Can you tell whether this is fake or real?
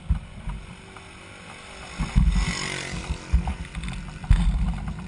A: real